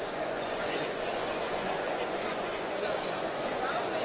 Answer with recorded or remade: remade